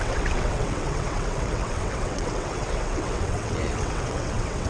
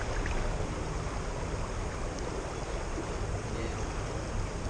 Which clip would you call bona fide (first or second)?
second